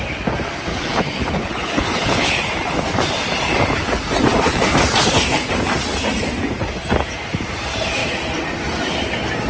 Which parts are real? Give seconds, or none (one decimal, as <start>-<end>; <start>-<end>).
0.0-0.7; 2.4-9.5